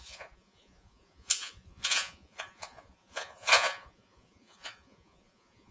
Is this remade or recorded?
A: remade